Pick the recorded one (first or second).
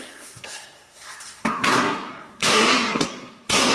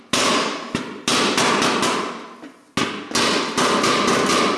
second